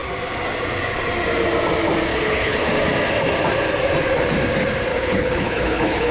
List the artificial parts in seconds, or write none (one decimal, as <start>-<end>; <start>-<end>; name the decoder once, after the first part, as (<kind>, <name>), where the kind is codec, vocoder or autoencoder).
2.1-2.7 (codec, HILCodec); 4.9-6.1